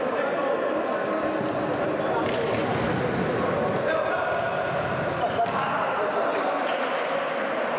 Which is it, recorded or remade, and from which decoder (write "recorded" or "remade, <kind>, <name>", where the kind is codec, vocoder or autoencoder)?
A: recorded